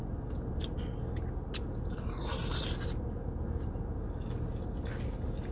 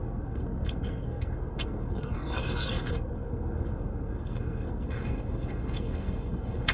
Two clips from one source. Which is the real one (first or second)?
first